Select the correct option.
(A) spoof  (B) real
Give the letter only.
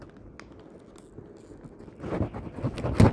B